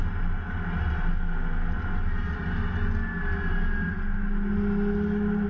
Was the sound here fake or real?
real